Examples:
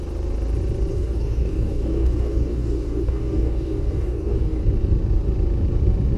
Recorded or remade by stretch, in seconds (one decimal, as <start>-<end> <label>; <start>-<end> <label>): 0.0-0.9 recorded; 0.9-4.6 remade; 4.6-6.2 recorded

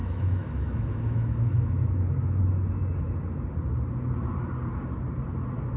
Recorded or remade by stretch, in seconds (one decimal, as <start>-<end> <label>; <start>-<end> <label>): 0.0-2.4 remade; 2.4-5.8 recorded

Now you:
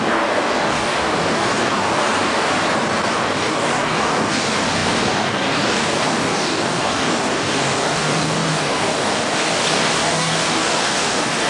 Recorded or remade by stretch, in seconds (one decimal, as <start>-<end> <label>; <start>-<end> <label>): 0.0-2.5 remade; 2.5-3.1 recorded; 3.1-11.5 remade